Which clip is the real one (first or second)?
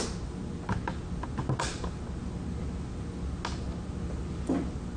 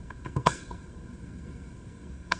first